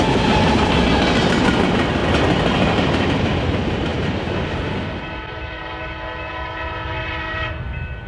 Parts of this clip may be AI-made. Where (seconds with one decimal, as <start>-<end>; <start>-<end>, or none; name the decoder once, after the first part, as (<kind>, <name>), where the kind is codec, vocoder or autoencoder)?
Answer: none